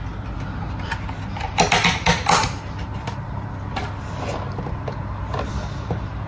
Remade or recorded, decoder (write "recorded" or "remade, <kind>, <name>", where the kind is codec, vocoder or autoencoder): recorded